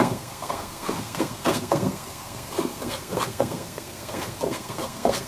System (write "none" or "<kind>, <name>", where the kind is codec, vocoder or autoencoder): codec, SNAC